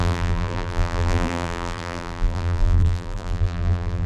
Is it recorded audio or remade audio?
remade